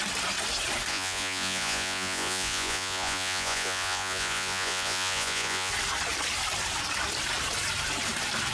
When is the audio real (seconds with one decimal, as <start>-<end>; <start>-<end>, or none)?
0.0-0.9; 5.7-8.5